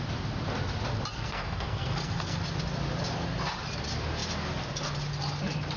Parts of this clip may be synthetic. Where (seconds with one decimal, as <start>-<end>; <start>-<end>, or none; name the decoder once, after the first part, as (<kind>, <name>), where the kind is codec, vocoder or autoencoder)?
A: 1.1-2.4 (codec, SNAC)